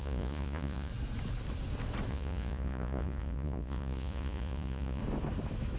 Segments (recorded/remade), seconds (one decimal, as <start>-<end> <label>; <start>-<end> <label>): 0.0-0.9 remade; 0.9-2.1 recorded; 2.1-5.0 remade; 5.0-5.8 recorded